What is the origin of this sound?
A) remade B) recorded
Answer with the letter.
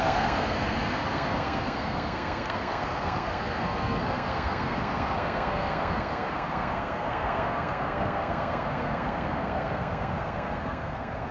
A